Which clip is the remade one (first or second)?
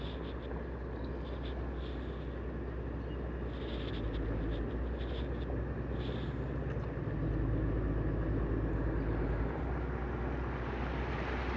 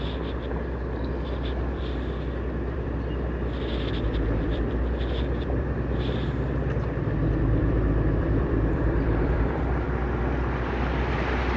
second